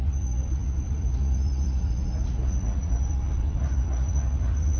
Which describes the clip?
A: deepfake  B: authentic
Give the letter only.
A